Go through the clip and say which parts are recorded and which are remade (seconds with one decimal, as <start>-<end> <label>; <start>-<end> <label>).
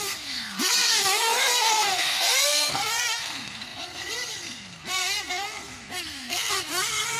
0.0-7.2 remade